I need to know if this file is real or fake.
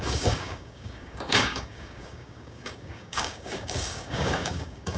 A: fake